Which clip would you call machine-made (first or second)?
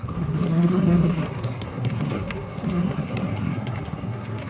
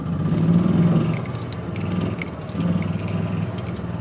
first